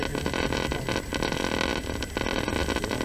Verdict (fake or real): real